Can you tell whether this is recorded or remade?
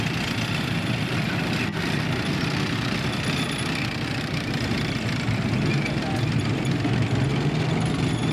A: recorded